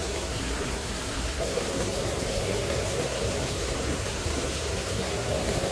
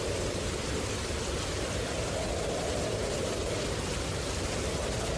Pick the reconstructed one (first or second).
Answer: first